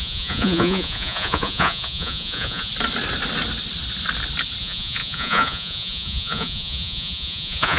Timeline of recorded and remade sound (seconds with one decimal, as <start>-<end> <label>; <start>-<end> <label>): 0.0-2.7 remade; 2.7-4.6 recorded; 4.6-7.8 remade